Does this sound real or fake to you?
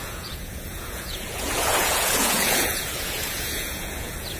fake